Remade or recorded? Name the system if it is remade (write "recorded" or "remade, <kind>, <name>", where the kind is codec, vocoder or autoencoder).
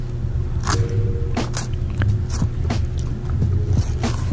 recorded